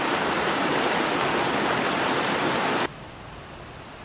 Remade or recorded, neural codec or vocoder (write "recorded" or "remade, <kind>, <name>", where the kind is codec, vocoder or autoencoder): recorded